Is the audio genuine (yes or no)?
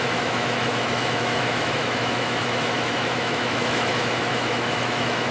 no